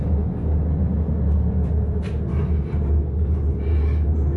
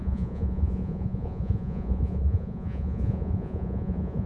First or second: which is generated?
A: second